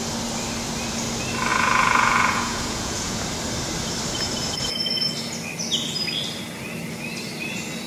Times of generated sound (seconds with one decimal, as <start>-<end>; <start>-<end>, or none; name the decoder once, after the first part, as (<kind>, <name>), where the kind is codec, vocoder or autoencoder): 1.5-3.2 (vocoder, Vocos)